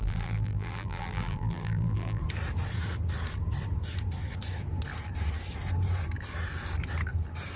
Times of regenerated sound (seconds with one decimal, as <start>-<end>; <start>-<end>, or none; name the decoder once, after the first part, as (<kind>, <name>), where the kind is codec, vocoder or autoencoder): 0.0-2.2 (vocoder, BigVGAN v2)